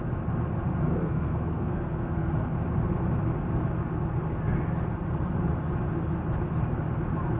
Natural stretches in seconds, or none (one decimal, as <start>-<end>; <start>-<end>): 0.0-0.9; 2.3-7.4